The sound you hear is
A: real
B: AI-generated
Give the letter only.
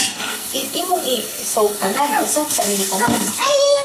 B